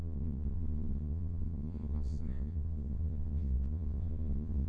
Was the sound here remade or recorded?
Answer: remade